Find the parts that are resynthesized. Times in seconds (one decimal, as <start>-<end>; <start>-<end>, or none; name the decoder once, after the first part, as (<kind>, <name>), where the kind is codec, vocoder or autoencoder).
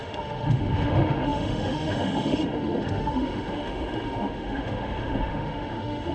0.0-6.1 (autoencoder, DAC-VAE)